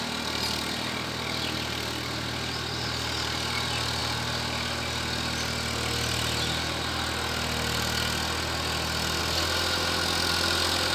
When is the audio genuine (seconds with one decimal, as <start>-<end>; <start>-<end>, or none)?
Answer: 0.0-10.9